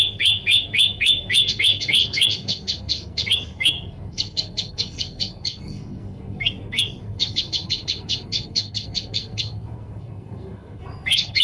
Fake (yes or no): yes